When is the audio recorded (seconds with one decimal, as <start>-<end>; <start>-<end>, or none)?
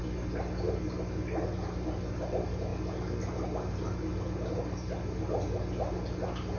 0.0-6.6